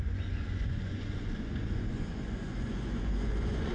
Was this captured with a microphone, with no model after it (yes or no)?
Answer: no